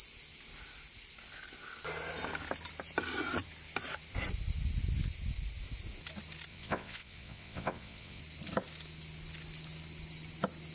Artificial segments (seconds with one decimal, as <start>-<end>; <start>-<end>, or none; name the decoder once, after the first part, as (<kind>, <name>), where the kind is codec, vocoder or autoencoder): 6.5-8.2 (vocoder, WaveNeXt)